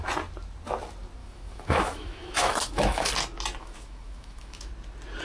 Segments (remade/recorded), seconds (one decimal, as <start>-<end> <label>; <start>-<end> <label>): 0.0-1.2 recorded; 1.2-3.1 remade; 3.1-3.6 recorded; 3.6-4.7 remade; 4.7-5.2 recorded